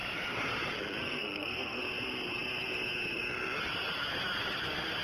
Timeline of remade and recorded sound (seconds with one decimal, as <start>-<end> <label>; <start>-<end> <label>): 0.0-1.0 recorded; 1.0-1.8 remade; 1.8-5.0 recorded

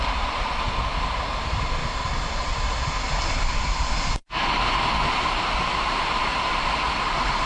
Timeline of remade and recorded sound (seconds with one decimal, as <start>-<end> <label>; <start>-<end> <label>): 0.0-1.8 remade; 1.8-3.2 recorded; 3.2-4.2 remade; 4.2-5.4 recorded; 5.4-6.3 remade; 6.3-7.0 recorded; 7.0-7.5 remade

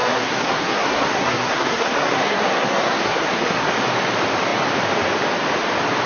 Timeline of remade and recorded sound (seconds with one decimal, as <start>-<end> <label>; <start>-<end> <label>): 0.0-3.7 remade; 3.7-6.1 recorded

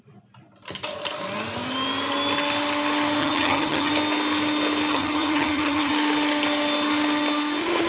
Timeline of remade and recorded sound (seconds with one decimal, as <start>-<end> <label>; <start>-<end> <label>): 0.0-3.2 recorded; 3.2-3.9 remade; 3.9-4.9 recorded; 4.9-5.9 remade; 5.9-7.9 recorded

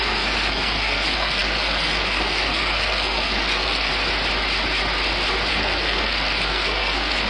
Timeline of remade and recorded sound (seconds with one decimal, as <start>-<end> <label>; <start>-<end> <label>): 0.0-3.9 remade; 3.9-5.5 recorded; 5.5-7.3 remade

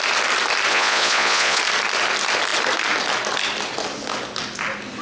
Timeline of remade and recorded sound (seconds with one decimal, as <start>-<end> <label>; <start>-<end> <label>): 0.0-0.7 recorded; 0.7-1.6 remade; 1.6-5.0 recorded

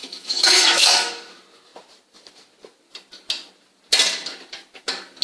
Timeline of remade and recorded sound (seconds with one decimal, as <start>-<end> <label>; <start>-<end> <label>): 0.0-1.1 remade; 1.1-5.2 recorded

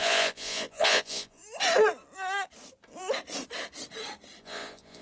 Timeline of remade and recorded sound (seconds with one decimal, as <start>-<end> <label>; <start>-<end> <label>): 0.0-1.4 remade; 1.4-4.4 recorded; 4.4-5.0 remade